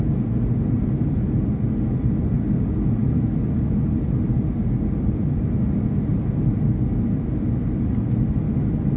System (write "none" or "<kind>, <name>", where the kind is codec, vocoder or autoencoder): none